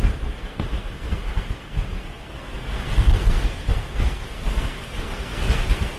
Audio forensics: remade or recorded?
remade